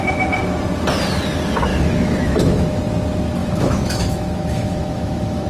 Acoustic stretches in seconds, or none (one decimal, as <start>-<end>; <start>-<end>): 0.0-1.7; 2.8-3.4